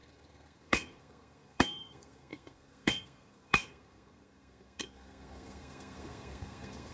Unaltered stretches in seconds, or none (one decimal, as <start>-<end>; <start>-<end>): none